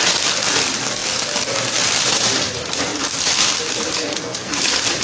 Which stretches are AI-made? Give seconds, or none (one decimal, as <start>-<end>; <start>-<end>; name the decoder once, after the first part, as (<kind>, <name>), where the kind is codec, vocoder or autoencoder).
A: 4.0-4.5 (codec, SNAC)